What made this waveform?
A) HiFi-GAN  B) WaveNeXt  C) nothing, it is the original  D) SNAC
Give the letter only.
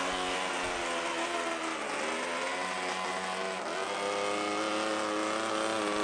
C